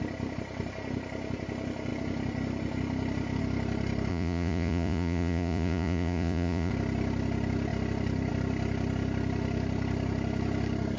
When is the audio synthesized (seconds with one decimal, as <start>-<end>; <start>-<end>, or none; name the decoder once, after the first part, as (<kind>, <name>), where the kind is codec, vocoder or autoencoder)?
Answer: 4.1-6.7 (vocoder, Vocos)